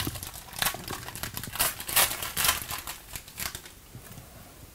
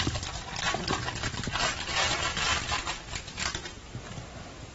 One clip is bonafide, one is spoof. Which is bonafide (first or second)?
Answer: first